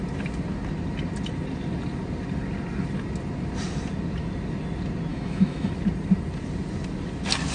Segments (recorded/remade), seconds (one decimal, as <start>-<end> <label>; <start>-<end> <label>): 0.0-5.1 recorded; 5.1-5.7 remade; 5.7-7.5 recorded